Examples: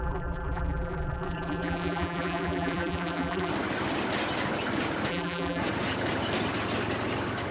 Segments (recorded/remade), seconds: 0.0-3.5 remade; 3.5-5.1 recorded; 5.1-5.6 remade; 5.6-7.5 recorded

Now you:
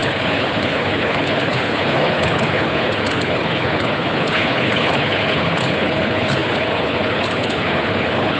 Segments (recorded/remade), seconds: 0.0-8.4 remade

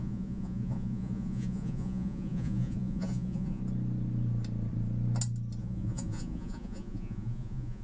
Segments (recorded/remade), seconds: 0.0-3.6 remade; 3.6-5.6 recorded; 5.6-7.8 remade

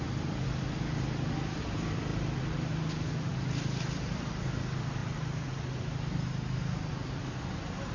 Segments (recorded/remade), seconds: 0.0-7.9 recorded

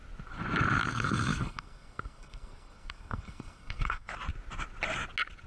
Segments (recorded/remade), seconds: 0.0-0.9 recorded; 0.9-4.1 remade; 4.1-5.5 recorded

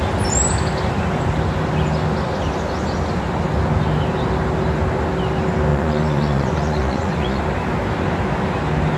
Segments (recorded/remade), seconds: 0.0-5.7 recorded; 5.7-7.4 remade; 7.4-9.0 recorded

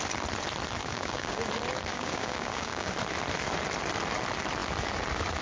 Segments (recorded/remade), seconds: 0.0-0.8 recorded; 0.8-1.4 remade; 1.4-1.9 recorded; 1.9-2.9 remade; 2.9-5.4 recorded